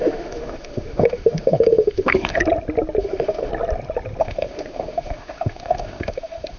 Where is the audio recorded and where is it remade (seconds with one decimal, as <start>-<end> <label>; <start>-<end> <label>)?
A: 0.0-2.4 remade; 2.4-3.0 recorded; 3.0-3.5 remade; 3.5-4.2 recorded; 4.2-6.6 remade